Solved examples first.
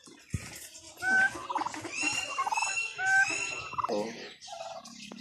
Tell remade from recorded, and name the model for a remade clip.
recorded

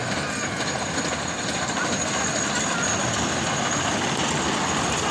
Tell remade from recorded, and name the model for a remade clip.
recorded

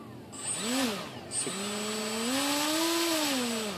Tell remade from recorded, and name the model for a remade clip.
recorded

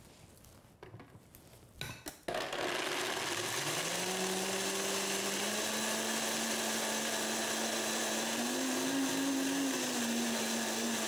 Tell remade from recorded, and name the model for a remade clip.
recorded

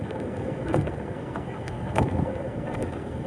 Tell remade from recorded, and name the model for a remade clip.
remade, codec, SNAC